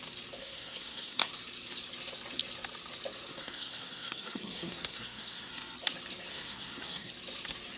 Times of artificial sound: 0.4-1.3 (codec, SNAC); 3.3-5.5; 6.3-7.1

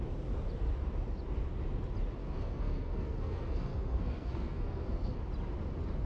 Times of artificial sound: 2.2-5.2 (codec, SNAC)

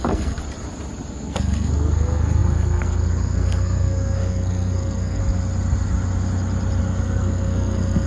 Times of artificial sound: 0.0-0.4 (codec, SNAC); 1.1-5.2; 6.8-8.1

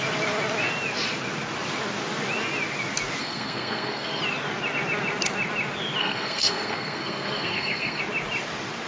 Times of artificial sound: 3.2-4.2 (codec, SNAC); 6.0-8.0

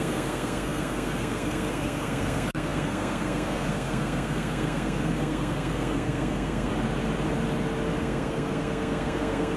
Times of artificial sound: 0.0-6.7 (codec, SNAC); 8.0-9.6

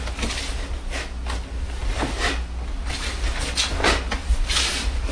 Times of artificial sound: none

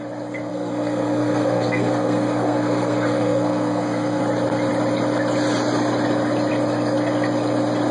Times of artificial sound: 0.5-4.2 (codec, SNAC)